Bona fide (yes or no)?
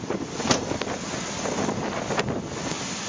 yes